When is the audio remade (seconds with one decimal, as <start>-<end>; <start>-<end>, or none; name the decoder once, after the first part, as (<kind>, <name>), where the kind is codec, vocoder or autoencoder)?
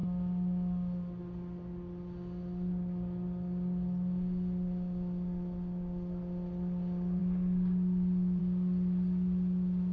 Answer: none